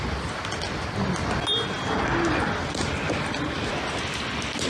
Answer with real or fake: real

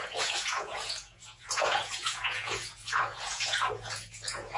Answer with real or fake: fake